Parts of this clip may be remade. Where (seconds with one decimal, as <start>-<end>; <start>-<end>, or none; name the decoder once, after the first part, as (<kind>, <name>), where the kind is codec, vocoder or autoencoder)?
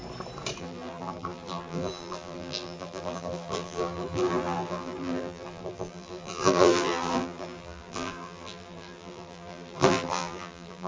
0.6-10.9 (vocoder, BigVGAN v2)